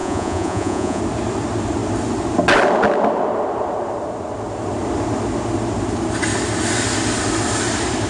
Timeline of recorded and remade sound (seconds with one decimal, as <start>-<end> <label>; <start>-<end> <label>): 0.0-1.0 remade; 1.0-8.1 recorded

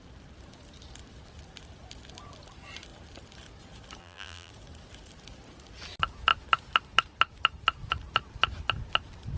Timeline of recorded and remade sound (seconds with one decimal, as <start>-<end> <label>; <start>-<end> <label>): 0.0-4.0 recorded; 4.0-4.5 remade; 4.5-9.4 recorded